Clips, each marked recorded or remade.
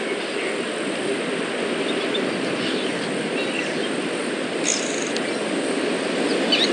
recorded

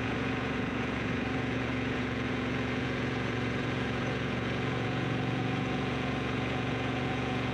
remade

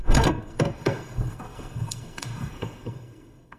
remade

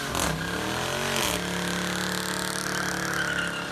recorded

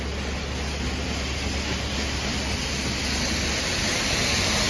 recorded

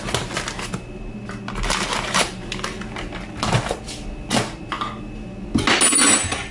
recorded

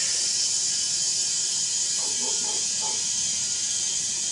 recorded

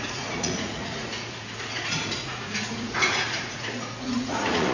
remade